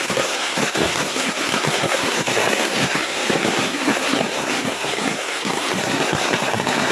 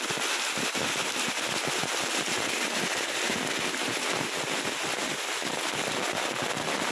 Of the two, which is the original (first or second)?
second